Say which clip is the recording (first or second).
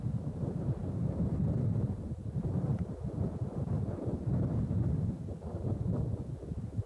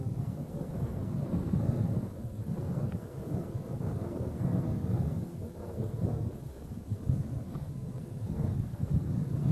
first